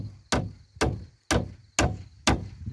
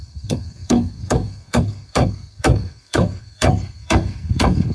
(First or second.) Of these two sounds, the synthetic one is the second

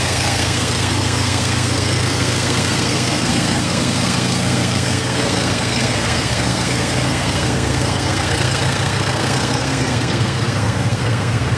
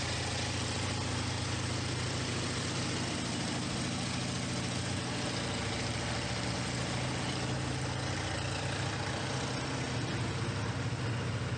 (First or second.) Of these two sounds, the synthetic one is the first